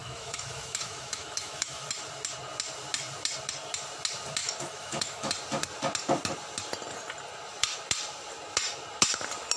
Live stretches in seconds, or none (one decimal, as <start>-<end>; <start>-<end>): 1.9-4.4; 5.3-9.6